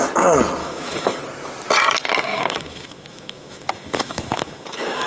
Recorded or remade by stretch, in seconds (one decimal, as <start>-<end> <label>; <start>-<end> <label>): 0.0-0.6 recorded; 0.6-1.2 remade; 1.2-2.3 recorded; 2.3-5.1 remade